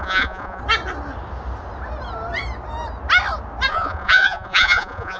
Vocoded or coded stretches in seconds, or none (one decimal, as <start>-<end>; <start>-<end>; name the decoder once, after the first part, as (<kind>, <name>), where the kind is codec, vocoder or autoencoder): 0.0-0.6 (vocoder, Vocos); 3.7-5.2